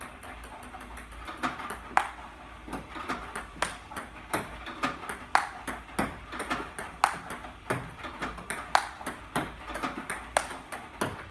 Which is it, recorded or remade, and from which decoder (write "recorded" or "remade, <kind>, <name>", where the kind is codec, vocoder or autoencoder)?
recorded